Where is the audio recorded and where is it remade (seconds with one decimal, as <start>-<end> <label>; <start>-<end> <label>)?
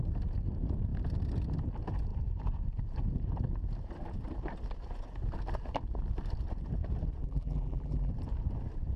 0.0-7.2 recorded; 7.2-8.1 remade; 8.1-9.0 recorded